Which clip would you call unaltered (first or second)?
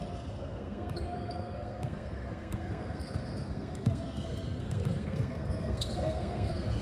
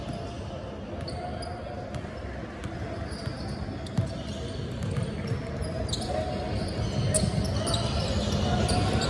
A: second